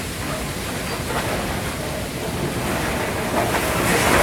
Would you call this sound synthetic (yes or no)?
no